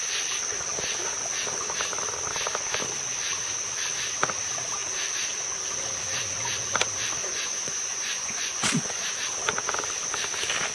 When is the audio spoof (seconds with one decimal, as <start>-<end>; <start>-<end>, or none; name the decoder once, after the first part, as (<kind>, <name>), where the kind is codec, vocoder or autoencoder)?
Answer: 7.2-9.1 (vocoder, Vocos)